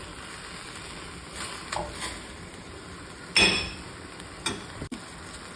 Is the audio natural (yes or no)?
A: yes